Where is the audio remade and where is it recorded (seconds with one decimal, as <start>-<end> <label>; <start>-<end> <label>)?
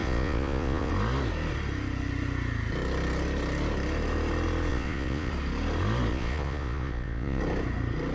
0.0-0.9 remade; 0.9-4.7 recorded; 4.7-5.3 remade; 5.3-6.1 recorded; 6.1-7.4 remade; 7.4-8.1 recorded